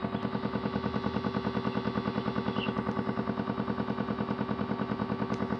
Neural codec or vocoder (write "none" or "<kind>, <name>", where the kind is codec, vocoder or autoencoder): none